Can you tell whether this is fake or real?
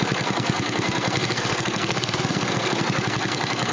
fake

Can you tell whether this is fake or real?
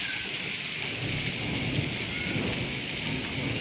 real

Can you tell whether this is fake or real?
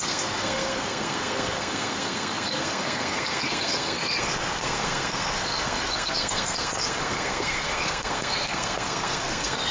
fake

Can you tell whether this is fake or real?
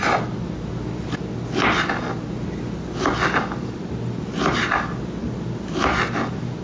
real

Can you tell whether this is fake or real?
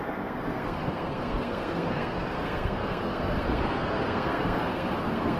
fake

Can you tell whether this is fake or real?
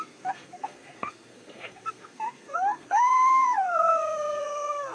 fake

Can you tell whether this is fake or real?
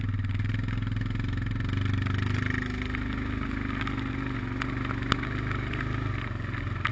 real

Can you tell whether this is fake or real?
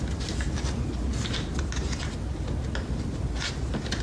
real